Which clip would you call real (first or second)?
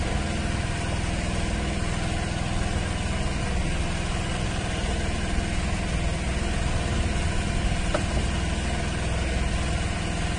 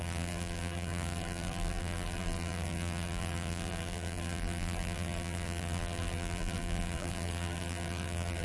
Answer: first